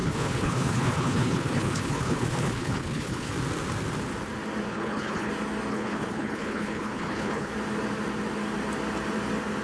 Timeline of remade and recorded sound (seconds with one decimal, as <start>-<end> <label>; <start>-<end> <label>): 0.0-3.3 remade; 3.3-4.7 recorded; 4.7-5.3 remade; 5.3-5.7 recorded; 5.7-7.5 remade; 7.5-9.6 recorded